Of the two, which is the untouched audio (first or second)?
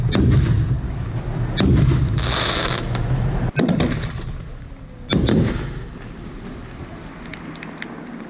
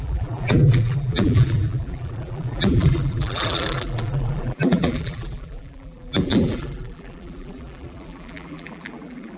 first